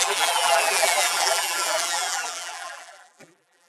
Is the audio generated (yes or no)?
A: yes